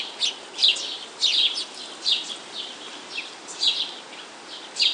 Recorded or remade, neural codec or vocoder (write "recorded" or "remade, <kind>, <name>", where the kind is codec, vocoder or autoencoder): recorded